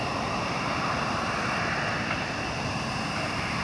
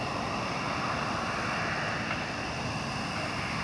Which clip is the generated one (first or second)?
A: first